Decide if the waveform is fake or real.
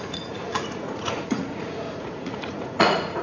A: fake